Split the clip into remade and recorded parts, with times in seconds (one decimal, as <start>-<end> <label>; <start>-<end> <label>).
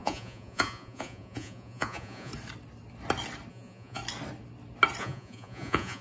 0.0-2.3 remade; 2.3-3.5 recorded; 3.5-4.0 remade; 4.0-5.0 recorded; 5.0-6.0 remade